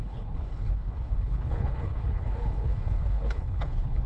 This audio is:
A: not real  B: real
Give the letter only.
A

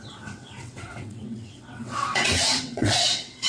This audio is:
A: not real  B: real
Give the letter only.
A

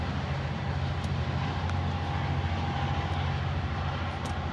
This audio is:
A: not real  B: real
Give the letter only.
B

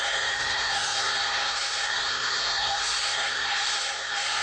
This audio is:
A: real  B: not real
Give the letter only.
B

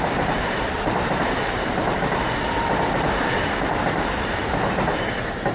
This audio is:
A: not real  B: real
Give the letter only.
A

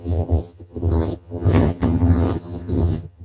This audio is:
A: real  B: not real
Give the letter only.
B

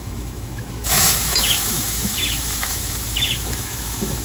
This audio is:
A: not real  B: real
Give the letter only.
A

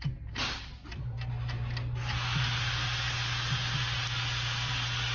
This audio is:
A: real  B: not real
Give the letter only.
A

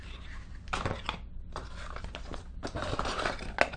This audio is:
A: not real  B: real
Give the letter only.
B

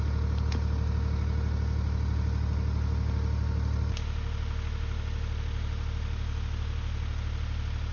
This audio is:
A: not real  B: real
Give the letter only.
B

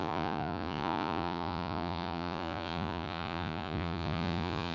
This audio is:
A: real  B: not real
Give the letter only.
B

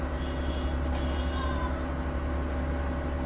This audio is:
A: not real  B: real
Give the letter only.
B